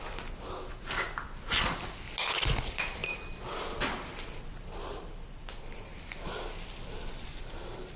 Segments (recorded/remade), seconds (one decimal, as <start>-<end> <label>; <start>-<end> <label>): 0.0-8.0 recorded